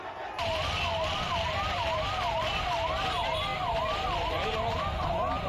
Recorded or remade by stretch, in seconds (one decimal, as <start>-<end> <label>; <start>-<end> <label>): 0.0-5.5 recorded